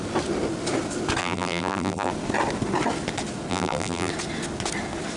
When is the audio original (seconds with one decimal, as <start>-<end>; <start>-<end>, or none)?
0.0-1.2; 2.1-3.5; 4.1-5.2